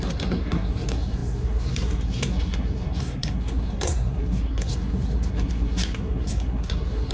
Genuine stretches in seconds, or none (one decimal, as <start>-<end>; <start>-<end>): none